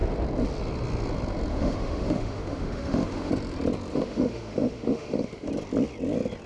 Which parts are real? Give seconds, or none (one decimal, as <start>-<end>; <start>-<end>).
0.0-1.5; 3.3-3.9; 5.5-6.5